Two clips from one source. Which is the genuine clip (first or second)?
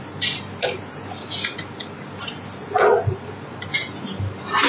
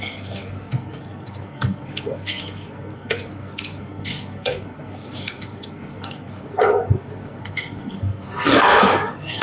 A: first